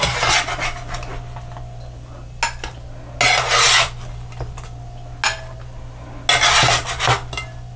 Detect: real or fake real